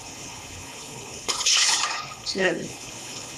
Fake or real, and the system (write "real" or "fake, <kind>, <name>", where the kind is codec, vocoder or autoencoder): fake, codec, HILCodec